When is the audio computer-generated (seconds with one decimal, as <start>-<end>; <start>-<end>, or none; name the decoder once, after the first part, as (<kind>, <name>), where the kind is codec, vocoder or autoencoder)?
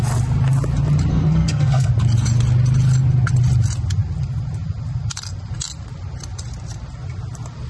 1.1-1.9 (codec, SNAC)